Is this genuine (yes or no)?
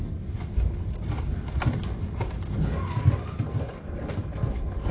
yes